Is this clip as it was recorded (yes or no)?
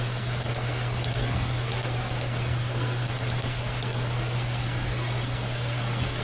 no